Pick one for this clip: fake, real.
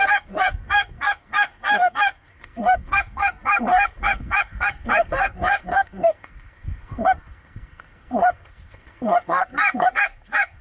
fake